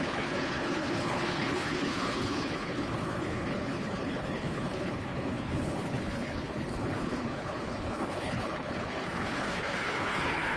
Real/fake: fake